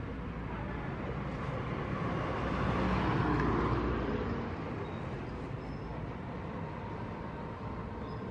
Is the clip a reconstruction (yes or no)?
no